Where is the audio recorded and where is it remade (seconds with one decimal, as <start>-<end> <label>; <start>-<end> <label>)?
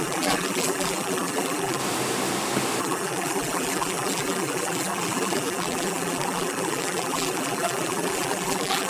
0.0-1.8 remade; 1.8-2.8 recorded; 2.8-8.9 remade